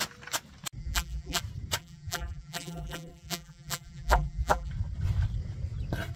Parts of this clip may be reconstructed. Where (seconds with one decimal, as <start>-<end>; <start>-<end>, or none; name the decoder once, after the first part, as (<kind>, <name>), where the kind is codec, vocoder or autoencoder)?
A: 0.8-1.4 (vocoder, BigVGAN v2); 1.8-4.7